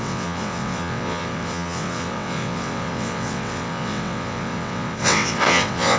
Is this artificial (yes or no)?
yes